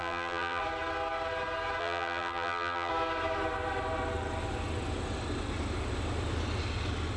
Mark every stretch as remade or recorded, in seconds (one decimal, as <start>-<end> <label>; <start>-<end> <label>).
0.0-0.6 remade; 0.6-1.8 recorded; 1.8-2.9 remade; 2.9-7.2 recorded